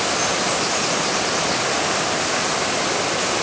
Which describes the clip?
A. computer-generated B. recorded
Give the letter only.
B